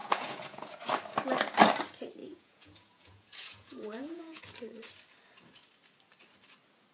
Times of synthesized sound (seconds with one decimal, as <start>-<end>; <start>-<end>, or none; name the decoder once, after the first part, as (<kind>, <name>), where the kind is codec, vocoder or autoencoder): 0.0-0.8 (vocoder, Vocos); 2.2-4.4